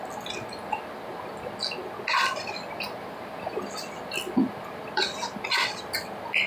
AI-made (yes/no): no